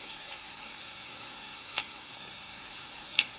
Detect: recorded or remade remade